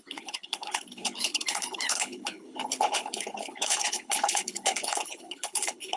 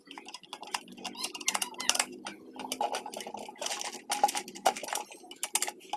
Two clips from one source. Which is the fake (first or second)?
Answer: first